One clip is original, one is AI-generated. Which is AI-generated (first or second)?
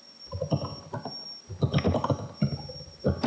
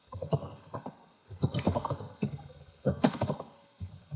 second